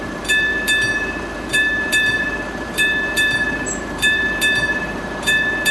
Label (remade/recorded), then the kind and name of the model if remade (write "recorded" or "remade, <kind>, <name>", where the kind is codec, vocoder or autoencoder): remade, vocoder, BigVGAN v2